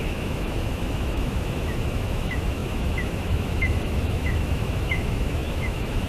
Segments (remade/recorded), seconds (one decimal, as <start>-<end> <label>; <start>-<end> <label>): 0.0-6.1 remade